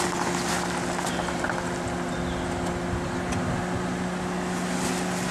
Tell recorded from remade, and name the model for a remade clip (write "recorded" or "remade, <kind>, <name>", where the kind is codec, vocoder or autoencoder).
recorded